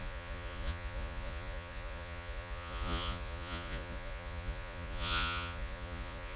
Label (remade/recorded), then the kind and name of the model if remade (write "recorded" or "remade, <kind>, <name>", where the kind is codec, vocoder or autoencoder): remade, vocoder, Vocos